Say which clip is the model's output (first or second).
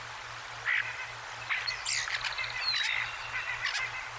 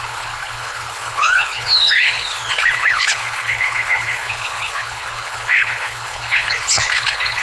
second